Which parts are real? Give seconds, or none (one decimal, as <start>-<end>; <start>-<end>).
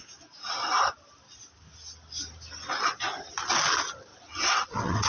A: 0.0-4.1